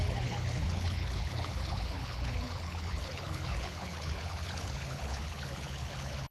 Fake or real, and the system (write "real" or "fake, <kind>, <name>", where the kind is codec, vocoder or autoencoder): fake, codec, HILCodec